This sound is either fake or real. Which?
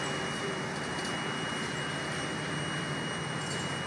real